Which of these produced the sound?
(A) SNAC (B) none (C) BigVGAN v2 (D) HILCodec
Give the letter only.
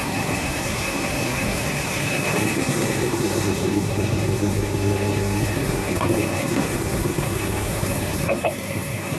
A